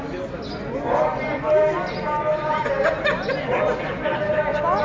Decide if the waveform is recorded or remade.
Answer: recorded